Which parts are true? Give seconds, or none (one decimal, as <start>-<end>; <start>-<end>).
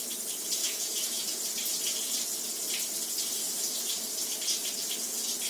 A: 0.0-0.6; 1.4-3.4; 3.9-5.5